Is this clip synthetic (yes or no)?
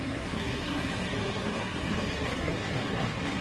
yes